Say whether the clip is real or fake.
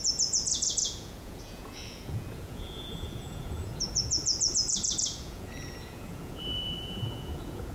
fake